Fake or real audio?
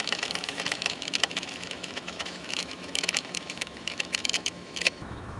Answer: fake